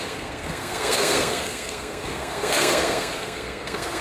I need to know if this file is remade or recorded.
remade